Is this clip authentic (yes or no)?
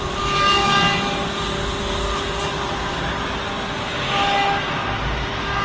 yes